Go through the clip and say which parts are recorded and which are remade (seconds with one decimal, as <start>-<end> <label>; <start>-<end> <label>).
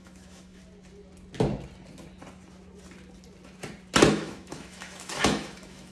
0.0-0.6 remade; 0.6-4.1 recorded; 4.1-5.9 remade